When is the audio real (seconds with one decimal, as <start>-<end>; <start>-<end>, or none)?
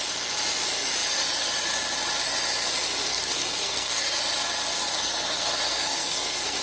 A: 0.0-3.1; 4.0-4.7